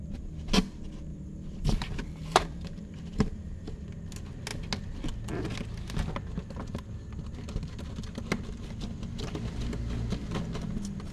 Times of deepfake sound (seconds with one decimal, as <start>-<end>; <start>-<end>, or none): 1.1-3.8